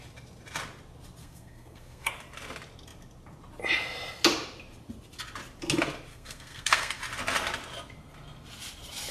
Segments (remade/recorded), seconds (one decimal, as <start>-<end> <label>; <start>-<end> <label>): 0.0-1.2 recorded; 1.2-2.1 remade; 2.1-6.1 recorded; 6.1-7.0 remade; 7.0-9.1 recorded